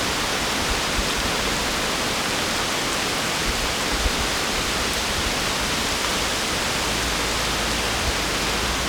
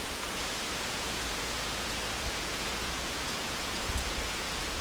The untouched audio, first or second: first